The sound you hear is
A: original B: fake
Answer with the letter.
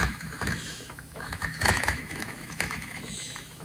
B